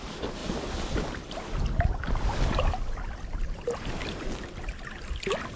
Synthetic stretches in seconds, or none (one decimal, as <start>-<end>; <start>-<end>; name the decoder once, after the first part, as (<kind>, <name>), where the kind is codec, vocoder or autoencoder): none